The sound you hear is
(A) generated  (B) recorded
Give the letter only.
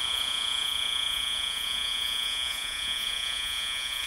A